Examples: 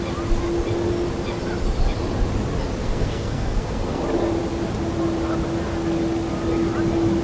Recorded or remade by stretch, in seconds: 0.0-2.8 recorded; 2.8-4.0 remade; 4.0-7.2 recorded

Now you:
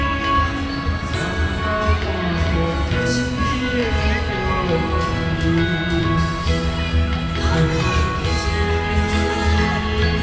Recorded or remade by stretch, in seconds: 0.0-10.2 recorded